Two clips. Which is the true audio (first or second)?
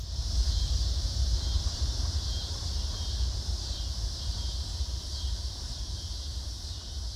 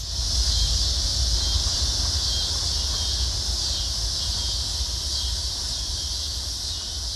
second